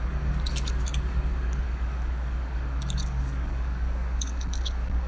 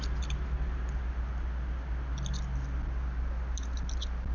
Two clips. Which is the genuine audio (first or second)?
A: second